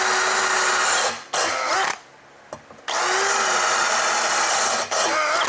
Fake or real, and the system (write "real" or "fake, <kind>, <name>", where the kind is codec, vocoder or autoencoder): real